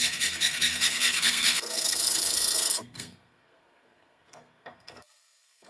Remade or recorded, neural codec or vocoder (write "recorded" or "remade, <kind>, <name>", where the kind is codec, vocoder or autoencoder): remade, codec, SNAC